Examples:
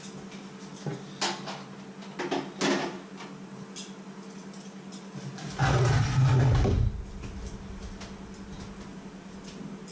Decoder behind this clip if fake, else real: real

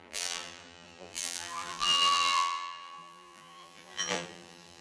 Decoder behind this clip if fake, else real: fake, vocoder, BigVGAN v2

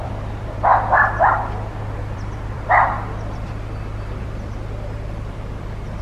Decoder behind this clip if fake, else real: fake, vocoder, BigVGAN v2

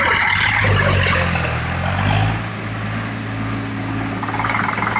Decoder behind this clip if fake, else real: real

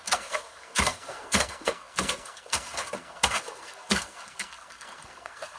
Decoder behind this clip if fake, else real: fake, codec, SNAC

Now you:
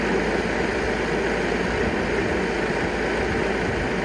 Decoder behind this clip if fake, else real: real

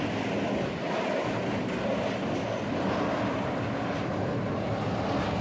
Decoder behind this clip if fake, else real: real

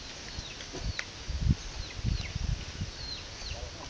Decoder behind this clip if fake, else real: real